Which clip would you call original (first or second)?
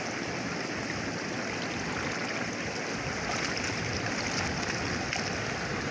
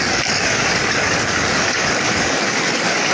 first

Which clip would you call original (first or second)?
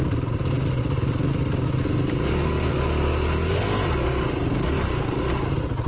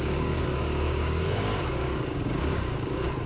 first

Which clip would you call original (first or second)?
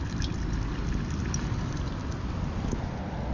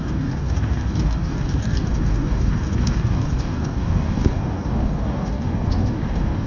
first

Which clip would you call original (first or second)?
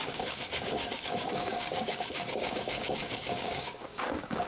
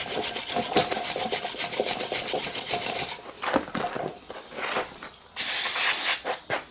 second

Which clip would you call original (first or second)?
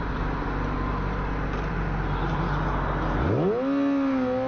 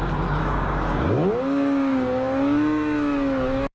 first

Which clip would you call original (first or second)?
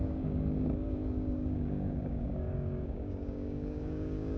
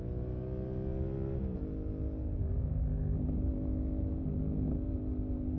second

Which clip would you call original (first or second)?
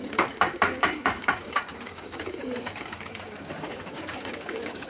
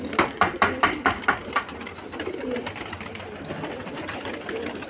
second